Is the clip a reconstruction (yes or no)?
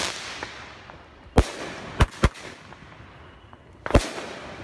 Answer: no